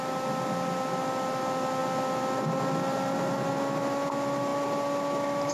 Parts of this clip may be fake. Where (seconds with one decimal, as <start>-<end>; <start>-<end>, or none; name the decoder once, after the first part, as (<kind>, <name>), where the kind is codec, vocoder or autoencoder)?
none